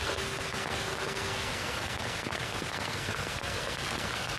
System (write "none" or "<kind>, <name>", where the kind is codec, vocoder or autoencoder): codec, SNAC